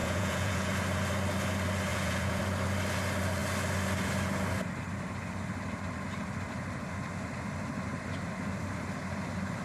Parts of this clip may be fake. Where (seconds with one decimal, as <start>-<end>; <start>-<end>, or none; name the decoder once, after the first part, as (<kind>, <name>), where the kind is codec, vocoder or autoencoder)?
0.0-0.7 (vocoder, Vocos); 1.9-2.4